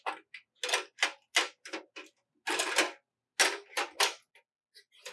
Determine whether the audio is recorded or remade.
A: recorded